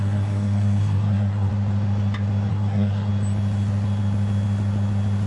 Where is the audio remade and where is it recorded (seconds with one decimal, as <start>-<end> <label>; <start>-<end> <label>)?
0.0-1.5 remade; 1.5-2.5 recorded; 2.5-3.1 remade; 3.1-5.3 recorded